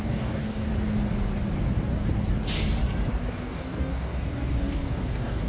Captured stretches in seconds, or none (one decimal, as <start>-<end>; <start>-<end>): 0.7-3.3